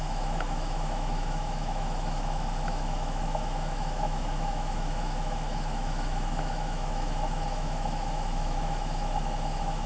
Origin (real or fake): fake